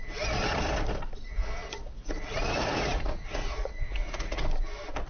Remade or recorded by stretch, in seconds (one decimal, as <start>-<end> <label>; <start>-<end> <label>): 0.0-1.3 recorded; 1.3-4.4 remade; 4.4-5.1 recorded